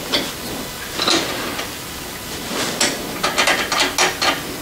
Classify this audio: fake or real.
real